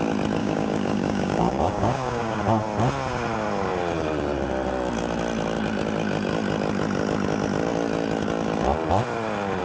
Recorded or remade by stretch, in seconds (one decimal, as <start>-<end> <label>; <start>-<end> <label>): 0.0-0.4 recorded; 0.4-2.4 remade; 2.4-9.6 recorded